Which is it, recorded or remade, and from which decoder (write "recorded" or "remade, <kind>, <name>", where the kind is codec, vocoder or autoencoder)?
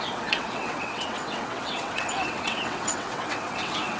remade, vocoder, WaveNeXt